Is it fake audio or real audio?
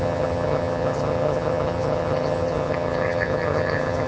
fake